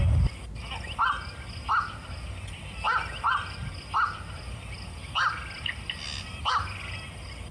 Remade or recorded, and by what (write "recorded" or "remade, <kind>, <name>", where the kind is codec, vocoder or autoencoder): recorded